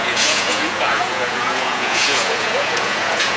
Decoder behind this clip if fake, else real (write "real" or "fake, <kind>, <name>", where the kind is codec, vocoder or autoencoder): fake, vocoder, Vocos